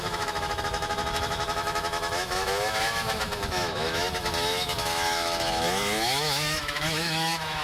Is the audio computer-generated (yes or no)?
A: yes